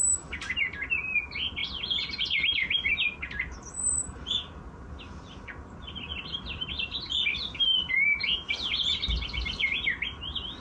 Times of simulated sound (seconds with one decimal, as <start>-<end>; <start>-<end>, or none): none